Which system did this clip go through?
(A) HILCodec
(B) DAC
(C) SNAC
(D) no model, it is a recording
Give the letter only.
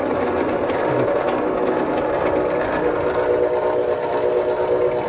D